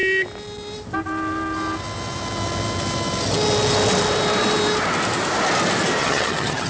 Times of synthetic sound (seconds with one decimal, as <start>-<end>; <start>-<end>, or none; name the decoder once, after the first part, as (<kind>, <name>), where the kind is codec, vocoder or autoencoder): 6.0-6.7 (vocoder, HiFi-GAN)